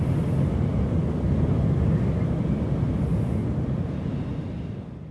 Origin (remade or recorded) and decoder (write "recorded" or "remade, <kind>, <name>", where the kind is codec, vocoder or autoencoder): recorded